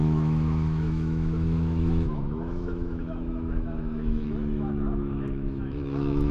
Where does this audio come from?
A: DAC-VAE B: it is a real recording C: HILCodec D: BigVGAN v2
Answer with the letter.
A